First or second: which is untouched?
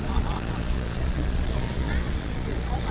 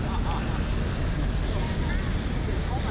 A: second